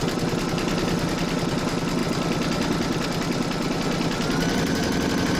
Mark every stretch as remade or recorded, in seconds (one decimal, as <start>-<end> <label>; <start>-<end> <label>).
0.0-5.4 recorded